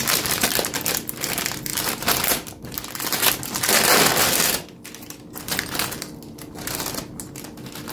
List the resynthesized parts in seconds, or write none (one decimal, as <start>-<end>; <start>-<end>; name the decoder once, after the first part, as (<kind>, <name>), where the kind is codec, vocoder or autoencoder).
1.7-3.3 (vocoder, BigVGAN v2)